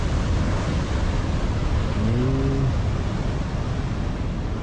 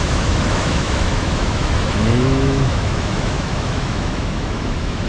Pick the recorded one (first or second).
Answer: first